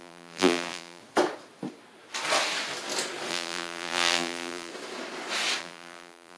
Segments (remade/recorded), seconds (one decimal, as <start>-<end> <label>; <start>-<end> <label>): 0.0-1.0 remade; 1.0-3.3 recorded; 3.3-4.7 remade; 4.7-5.6 recorded; 5.6-6.4 remade